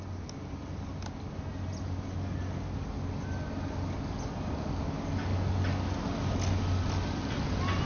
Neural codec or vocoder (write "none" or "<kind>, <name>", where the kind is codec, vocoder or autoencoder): none